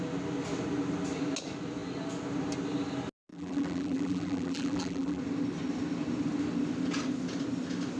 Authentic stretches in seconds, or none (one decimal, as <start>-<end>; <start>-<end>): 0.0-3.3; 5.2-8.0